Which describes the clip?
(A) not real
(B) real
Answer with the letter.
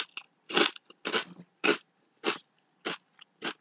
B